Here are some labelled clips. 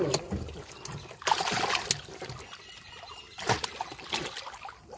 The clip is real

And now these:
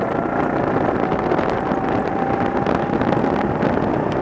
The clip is real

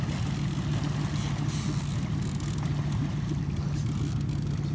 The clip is real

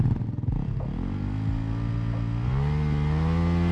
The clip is real